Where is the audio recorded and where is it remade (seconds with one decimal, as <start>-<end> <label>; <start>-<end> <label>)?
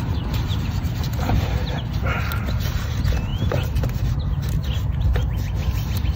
0.0-0.5 recorded; 0.5-1.5 remade; 1.5-6.2 recorded